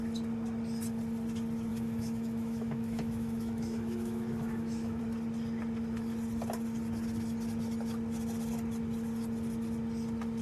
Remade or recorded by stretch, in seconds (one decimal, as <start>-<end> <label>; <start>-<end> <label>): 0.0-1.7 recorded; 1.7-5.0 remade; 5.0-10.4 recorded